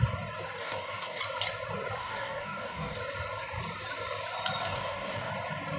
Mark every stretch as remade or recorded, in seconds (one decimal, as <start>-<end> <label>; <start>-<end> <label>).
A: 0.0-0.6 recorded; 0.6-1.2 remade; 1.2-2.0 recorded; 2.0-3.0 remade; 3.0-4.6 recorded; 4.6-5.3 remade; 5.3-5.8 recorded